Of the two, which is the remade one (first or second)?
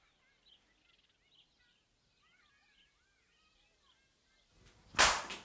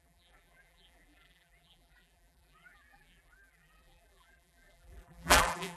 second